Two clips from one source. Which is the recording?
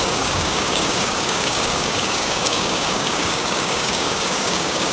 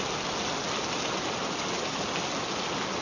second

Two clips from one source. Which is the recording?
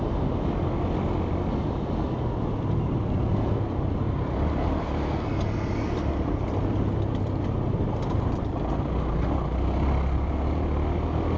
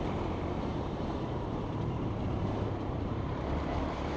first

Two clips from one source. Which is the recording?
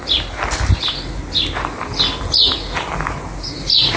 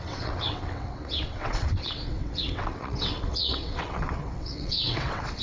first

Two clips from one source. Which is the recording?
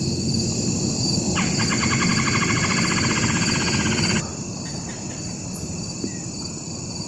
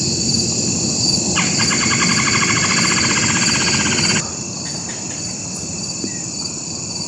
first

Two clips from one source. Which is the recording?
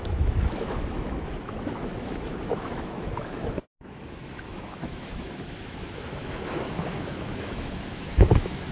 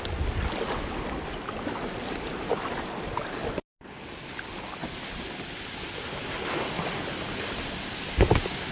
second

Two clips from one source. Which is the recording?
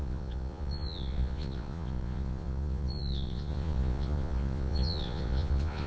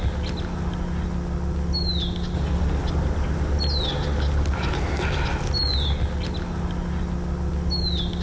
second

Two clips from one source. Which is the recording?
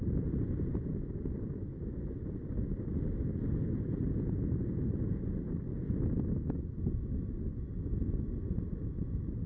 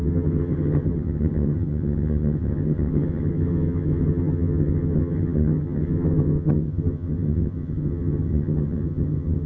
first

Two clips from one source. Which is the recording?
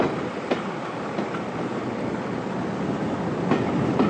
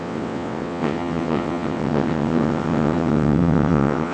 first